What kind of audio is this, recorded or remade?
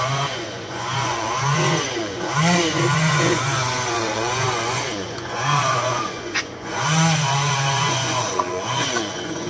remade